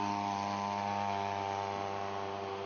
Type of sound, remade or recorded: recorded